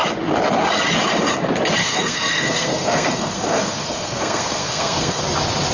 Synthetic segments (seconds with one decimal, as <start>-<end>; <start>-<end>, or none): 1.8-5.2